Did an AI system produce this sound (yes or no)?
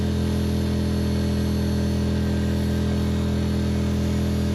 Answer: no